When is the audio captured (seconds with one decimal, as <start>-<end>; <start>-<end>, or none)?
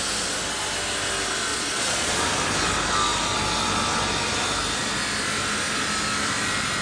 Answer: 0.0-1.5; 2.2-6.8